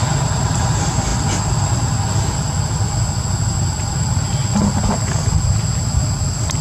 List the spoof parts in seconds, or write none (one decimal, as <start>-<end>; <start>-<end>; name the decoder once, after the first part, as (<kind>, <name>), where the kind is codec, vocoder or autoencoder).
none